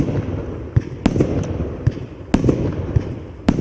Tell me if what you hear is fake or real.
real